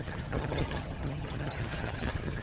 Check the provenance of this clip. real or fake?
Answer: fake